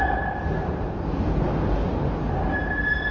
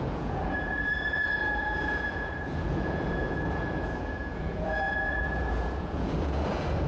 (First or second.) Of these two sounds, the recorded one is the first